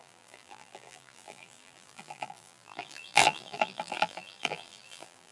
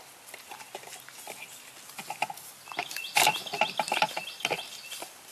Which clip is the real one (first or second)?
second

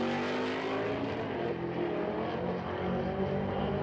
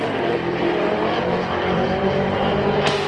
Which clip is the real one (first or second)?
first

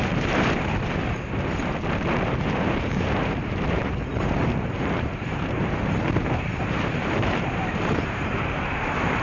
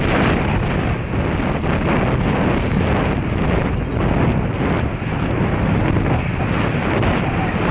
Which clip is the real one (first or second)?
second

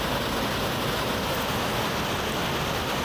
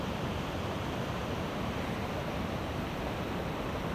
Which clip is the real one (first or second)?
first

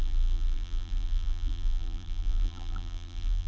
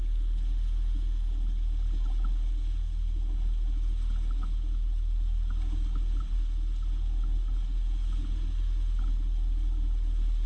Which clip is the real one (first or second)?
second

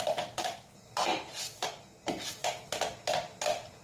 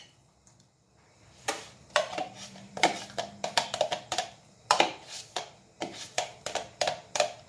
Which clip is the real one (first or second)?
first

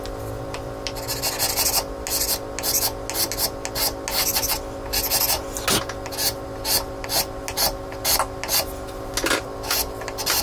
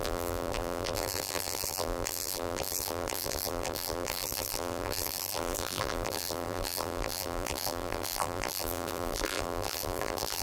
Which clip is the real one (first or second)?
first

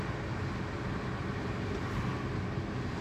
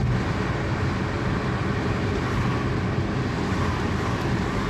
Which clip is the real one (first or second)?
first